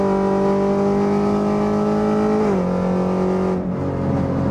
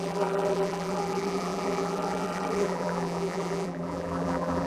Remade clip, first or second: second